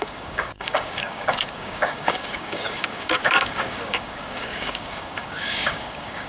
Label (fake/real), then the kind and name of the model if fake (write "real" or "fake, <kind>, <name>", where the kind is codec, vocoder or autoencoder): fake, codec, DAC